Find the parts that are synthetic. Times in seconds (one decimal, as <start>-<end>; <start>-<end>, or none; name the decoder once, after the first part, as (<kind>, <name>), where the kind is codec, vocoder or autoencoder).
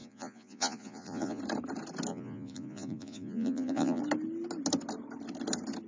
0.0-1.4 (vocoder, Vocos); 2.1-4.0